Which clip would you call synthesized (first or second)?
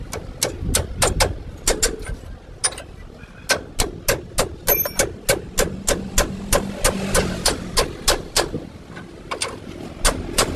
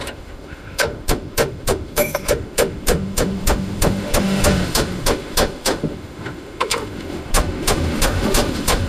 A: second